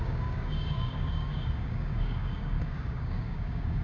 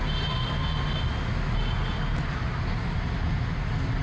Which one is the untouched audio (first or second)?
second